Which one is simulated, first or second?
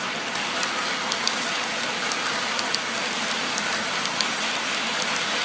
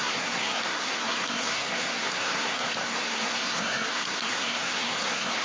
second